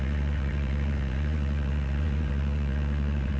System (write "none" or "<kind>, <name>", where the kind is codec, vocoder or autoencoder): vocoder, Vocos